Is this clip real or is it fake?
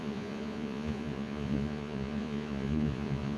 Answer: fake